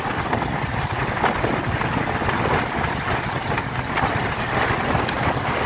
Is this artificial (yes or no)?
no